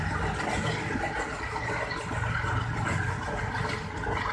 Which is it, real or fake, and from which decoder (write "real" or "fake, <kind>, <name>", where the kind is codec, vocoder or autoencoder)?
real